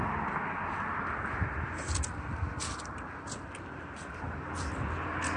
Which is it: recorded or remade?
recorded